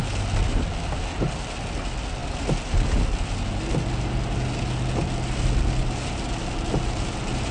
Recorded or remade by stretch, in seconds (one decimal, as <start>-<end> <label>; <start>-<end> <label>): 0.0-7.5 recorded